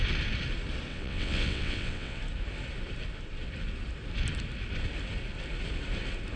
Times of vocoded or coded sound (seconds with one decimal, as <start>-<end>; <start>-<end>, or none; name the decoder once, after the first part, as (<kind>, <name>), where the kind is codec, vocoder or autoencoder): 0.9-2.2 (vocoder, WaveNeXt)